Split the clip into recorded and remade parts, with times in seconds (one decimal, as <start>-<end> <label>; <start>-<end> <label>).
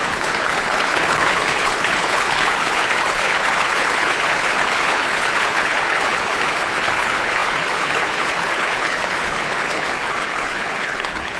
0.0-11.4 remade